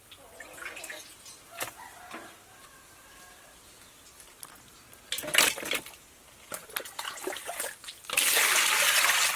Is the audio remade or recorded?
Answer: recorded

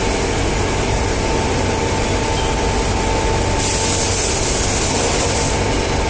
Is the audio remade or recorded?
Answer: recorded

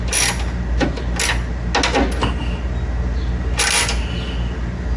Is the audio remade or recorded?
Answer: recorded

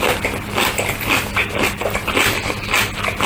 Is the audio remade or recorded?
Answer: recorded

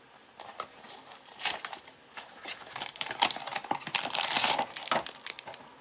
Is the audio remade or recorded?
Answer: recorded